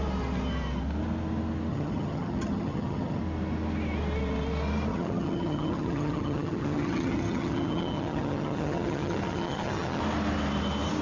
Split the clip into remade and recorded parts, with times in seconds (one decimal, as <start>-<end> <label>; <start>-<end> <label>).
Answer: 0.0-1.7 recorded; 1.7-3.2 remade; 3.2-4.9 recorded; 4.9-10.0 remade; 10.0-11.0 recorded